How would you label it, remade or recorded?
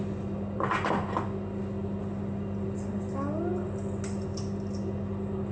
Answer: recorded